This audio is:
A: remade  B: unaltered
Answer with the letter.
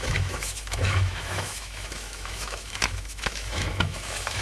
A